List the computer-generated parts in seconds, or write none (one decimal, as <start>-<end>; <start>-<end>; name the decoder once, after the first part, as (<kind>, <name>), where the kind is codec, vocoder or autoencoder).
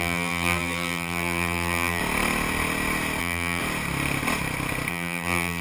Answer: 0.0-2.0 (vocoder, BigVGAN v2); 3.2-3.6; 4.9-5.6